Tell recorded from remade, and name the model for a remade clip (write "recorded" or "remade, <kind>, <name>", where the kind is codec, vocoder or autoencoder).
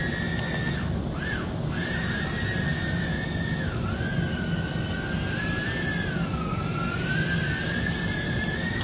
recorded